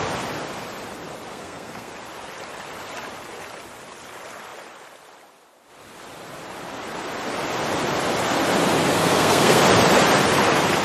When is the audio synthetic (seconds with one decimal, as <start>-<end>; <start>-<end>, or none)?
1.3-1.9; 8.9-9.6